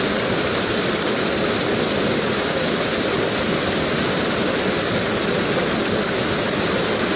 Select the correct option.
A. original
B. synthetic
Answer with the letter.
A